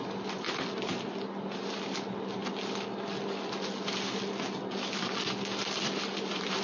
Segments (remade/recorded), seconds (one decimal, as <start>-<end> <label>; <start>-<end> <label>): 0.0-6.6 recorded